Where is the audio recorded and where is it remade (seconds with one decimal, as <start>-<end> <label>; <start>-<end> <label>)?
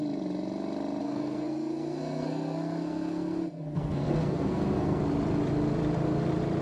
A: 0.0-1.0 recorded; 1.0-5.0 remade; 5.0-6.6 recorded